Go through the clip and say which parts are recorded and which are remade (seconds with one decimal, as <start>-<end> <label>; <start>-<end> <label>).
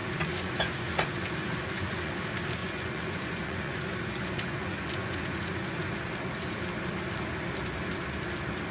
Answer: 0.0-2.1 remade; 2.1-2.6 recorded; 2.6-6.1 remade; 6.1-8.7 recorded